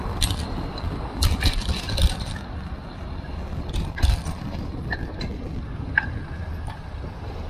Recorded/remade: remade